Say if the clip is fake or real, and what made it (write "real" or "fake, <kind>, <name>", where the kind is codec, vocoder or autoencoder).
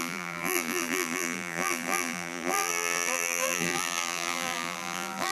fake, vocoder, BigVGAN v2